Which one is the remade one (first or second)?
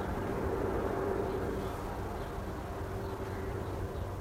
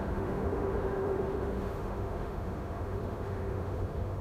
second